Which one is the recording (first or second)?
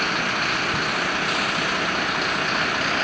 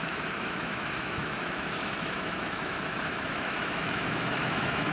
first